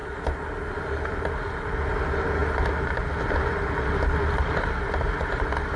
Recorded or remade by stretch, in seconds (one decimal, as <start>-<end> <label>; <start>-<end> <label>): 0.0-5.8 recorded

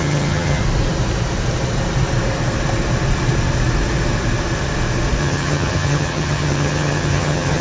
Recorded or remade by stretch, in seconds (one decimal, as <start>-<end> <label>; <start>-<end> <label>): 0.0-0.6 remade; 0.6-5.2 recorded; 5.2-7.6 remade

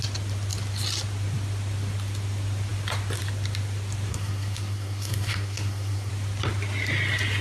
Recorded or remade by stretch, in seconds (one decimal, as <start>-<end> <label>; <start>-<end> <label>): 0.0-4.1 recorded; 4.1-6.1 remade; 6.1-7.4 recorded

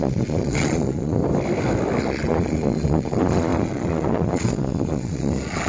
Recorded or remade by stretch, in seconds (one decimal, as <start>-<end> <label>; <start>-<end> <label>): 0.0-1.2 remade; 1.2-2.0 recorded; 2.0-5.7 remade

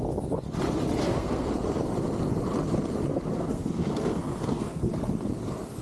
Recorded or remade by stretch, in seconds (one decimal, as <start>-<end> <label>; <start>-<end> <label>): 0.0-1.0 recorded; 1.0-1.5 remade; 1.5-3.1 recorded; 3.1-4.9 remade; 4.9-5.8 recorded

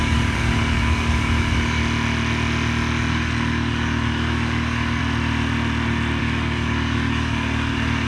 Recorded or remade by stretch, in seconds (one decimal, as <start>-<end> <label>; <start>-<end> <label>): 0.0-1.8 remade; 1.8-3.1 recorded; 3.1-5.0 remade; 5.0-6.2 recorded; 6.2-8.1 remade

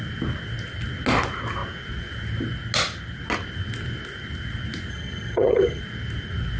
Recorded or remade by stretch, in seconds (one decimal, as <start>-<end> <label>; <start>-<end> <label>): 0.0-4.9 recorded; 4.9-5.8 remade; 5.8-6.6 recorded

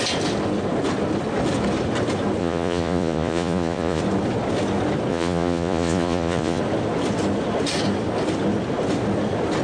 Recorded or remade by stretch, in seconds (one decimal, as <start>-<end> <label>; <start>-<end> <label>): 0.0-2.4 recorded; 2.4-4.0 remade; 4.0-5.1 recorded; 5.1-6.6 remade; 6.6-9.6 recorded